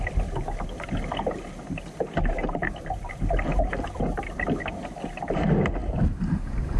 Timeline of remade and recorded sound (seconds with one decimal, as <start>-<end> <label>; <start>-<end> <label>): 0.0-2.4 recorded; 2.4-4.2 remade; 4.2-6.8 recorded